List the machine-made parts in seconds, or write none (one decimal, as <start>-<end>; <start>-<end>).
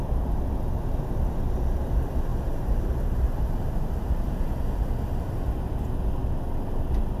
2.3-4.5